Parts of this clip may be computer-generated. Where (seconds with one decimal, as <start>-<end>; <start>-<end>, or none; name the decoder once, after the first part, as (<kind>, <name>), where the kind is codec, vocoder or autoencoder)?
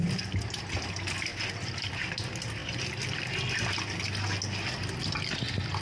none